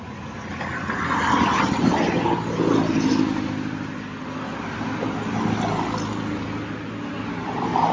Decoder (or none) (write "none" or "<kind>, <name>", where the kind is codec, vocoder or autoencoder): none